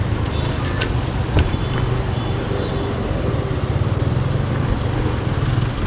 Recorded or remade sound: recorded